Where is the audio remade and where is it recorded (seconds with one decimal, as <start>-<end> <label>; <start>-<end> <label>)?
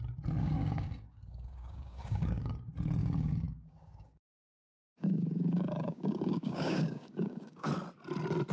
0.0-0.4 recorded; 0.4-2.5 remade; 2.5-3.0 recorded; 3.0-7.7 remade; 7.7-8.5 recorded